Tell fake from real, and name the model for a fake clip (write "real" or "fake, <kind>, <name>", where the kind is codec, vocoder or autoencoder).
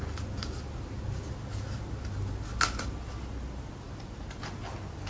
real